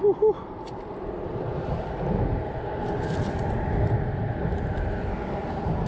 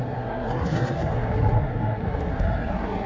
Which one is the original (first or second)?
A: first